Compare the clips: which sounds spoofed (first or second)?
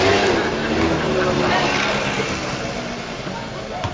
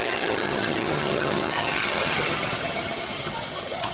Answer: second